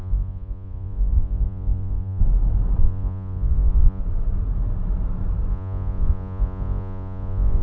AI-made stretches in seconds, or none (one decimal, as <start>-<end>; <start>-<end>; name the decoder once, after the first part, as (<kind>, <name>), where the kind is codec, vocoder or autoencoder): 0.0-2.2 (vocoder, Vocos); 2.8-4.0; 5.5-7.6